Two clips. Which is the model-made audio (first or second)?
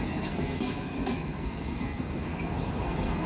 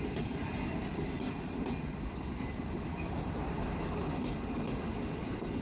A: first